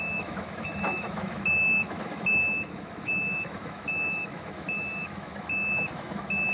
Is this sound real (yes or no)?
no